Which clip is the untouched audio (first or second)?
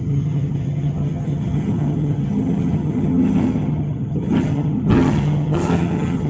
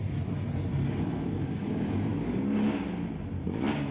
second